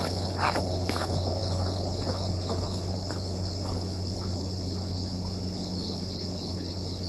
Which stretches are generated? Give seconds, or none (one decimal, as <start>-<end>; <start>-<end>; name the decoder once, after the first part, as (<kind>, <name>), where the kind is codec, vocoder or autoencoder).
0.0-7.1 (codec, HILCodec)